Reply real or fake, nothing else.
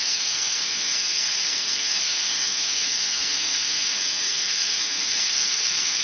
fake